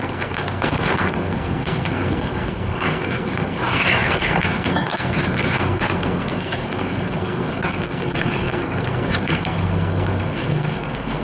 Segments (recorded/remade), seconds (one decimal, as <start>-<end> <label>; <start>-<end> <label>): 0.0-11.2 remade